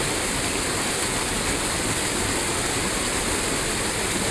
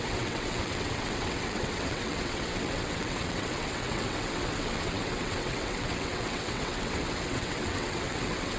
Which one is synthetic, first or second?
second